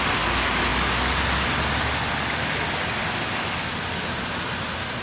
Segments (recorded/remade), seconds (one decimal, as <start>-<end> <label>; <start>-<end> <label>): 0.0-5.0 recorded